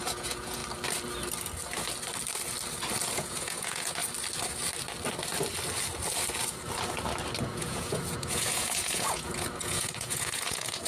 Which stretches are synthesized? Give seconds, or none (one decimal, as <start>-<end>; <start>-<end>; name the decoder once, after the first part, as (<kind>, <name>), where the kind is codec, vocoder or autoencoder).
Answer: 0.0-0.6 (vocoder, Vocos); 3.1-4.0; 7.4-10.9